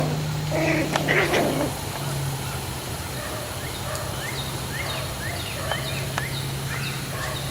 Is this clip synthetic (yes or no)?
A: no